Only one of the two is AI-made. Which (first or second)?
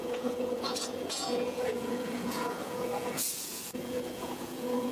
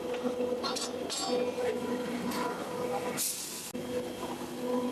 first